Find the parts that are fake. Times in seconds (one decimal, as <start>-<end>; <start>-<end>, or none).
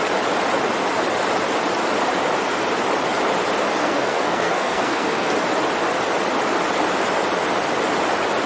3.8-5.3